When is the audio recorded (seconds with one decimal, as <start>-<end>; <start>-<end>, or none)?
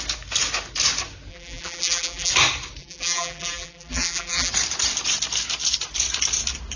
0.0-1.3; 2.3-2.8; 4.5-6.8